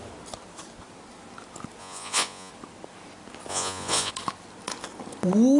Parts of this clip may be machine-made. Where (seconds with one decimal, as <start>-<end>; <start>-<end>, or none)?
1.8-2.5; 3.5-4.1

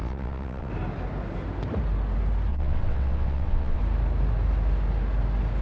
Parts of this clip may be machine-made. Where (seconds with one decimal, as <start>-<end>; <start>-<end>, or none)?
0.0-0.7; 2.5-3.8